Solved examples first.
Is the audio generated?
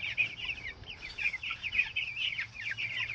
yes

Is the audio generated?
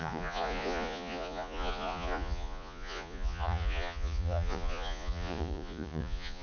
yes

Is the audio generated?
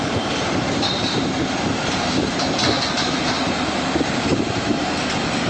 yes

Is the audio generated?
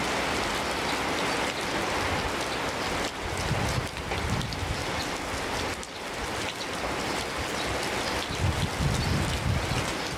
no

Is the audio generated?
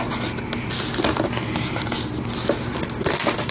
no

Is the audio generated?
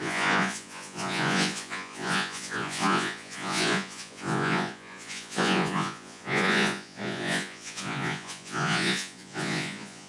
yes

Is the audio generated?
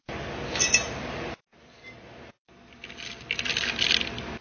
no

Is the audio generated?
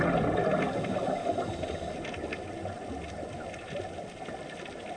no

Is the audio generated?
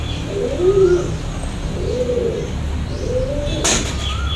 no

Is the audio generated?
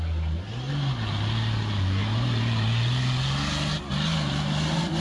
no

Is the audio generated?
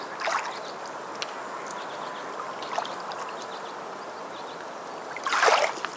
no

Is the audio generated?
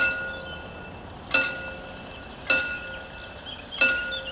no